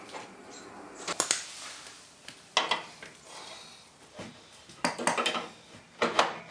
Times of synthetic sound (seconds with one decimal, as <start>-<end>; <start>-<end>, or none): none